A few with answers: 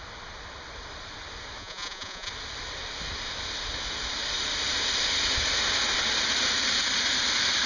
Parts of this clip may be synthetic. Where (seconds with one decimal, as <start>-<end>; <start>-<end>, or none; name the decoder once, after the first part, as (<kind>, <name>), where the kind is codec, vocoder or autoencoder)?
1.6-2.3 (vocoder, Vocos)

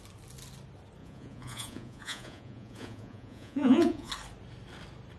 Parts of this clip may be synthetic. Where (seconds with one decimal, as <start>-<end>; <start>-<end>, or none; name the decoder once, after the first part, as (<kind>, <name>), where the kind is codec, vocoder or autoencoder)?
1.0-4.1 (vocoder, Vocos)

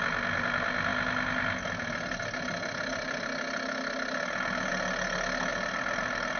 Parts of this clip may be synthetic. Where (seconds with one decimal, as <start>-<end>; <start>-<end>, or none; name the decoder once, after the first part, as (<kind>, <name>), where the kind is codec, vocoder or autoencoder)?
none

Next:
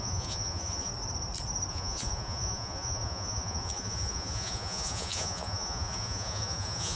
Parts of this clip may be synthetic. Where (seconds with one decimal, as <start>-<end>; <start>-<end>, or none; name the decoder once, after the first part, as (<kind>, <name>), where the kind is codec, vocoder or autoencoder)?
0.0-0.9 (vocoder, Vocos); 1.7-7.0

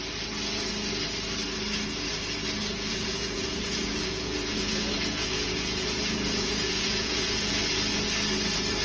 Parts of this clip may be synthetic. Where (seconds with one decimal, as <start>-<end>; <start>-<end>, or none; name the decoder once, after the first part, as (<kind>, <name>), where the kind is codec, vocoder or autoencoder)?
2.7-7.5 (vocoder, Vocos)

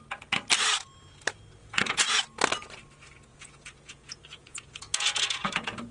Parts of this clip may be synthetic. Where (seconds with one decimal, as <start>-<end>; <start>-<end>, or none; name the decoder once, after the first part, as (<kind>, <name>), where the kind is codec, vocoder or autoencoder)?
1.6-2.2 (vocoder, Vocos); 3.3-5.9

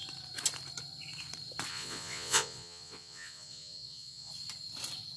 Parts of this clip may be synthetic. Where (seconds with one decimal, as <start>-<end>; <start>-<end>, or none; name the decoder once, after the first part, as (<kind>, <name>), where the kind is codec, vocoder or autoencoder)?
1.7-4.3 (vocoder, Vocos)